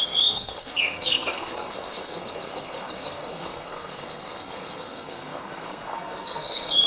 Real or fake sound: fake